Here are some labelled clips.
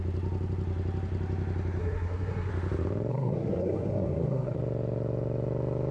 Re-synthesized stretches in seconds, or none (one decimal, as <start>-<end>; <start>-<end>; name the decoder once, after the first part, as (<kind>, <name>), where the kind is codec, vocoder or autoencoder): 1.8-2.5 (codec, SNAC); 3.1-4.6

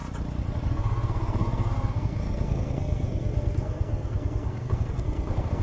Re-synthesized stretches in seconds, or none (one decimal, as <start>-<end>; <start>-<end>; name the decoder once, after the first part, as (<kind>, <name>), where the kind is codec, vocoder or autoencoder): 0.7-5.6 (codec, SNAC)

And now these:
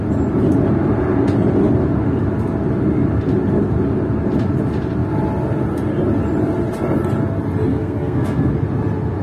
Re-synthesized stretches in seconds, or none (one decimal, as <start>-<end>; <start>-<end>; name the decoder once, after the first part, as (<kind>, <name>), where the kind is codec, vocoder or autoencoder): 7.7-8.5 (codec, SNAC)

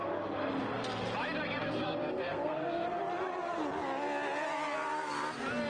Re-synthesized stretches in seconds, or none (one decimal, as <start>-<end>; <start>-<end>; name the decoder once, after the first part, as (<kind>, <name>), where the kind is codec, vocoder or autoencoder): 1.6-3.0 (codec, SNAC)

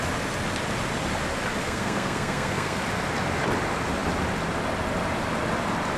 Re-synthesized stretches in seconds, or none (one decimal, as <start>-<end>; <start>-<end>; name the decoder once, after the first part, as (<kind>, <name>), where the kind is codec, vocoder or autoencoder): 1.6-2.8 (codec, SNAC)

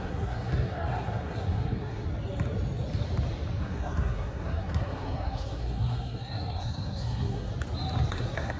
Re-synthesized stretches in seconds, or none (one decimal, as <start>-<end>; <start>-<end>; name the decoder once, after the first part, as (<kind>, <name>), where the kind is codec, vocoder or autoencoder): 0.0-2.1 (codec, SNAC); 3.6-7.5; 8.1-8.6